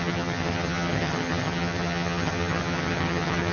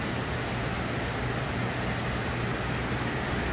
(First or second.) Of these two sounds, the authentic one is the second